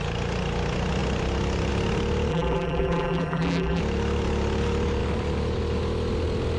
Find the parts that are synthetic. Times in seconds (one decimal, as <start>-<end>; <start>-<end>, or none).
2.3-3.8